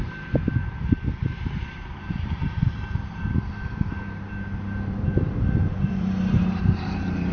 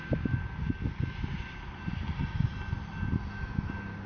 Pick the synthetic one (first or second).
first